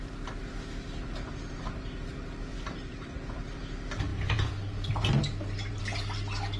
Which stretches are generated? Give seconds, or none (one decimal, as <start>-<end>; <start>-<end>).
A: 2.5-3.1; 4.1-5.8